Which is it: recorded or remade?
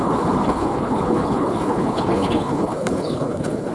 remade